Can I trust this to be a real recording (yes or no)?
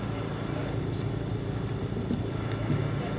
yes